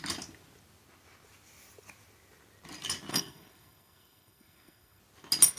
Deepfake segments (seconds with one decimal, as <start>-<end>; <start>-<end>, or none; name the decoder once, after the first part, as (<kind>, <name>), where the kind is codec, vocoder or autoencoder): 3.1-5.0 (codec, SNAC)